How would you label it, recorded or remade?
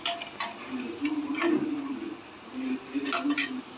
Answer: recorded